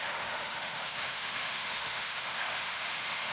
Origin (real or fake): fake